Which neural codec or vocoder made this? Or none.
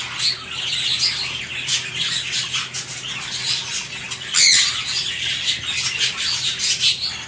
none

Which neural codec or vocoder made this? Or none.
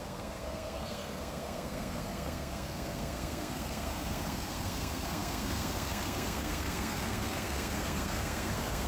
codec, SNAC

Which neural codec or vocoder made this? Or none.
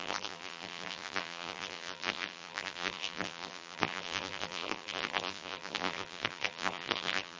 vocoder, BigVGAN v2